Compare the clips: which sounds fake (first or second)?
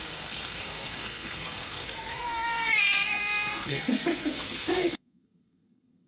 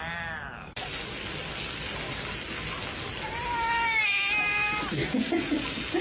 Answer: first